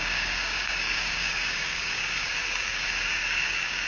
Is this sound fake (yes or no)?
yes